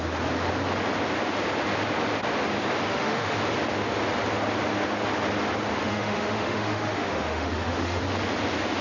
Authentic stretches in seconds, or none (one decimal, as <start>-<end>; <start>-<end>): 0.0-2.9; 3.4-5.8; 8.0-8.8